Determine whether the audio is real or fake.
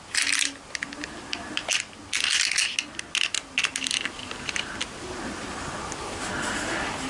real